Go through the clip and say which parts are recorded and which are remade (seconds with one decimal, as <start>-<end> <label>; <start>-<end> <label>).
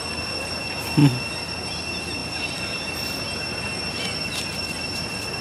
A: 0.0-5.4 recorded